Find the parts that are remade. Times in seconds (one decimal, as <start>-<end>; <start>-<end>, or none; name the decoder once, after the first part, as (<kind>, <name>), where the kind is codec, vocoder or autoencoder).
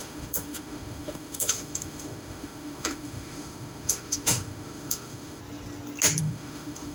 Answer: 0.0-5.4 (autoencoder, DAC-VAE); 6.2-6.9